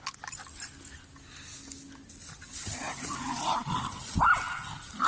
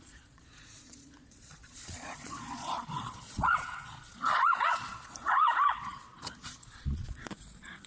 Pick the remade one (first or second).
second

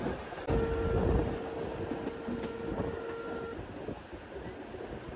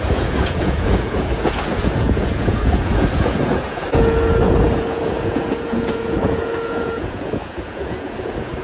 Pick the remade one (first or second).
second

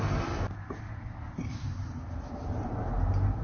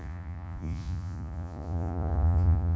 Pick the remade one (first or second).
second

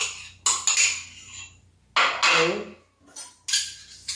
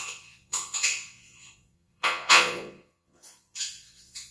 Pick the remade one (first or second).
second